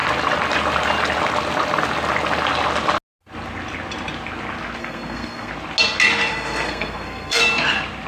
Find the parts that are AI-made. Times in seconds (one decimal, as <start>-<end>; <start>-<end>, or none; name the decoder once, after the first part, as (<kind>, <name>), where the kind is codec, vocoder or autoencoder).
4.8-5.5 (codec, SNAC); 6.3-7.4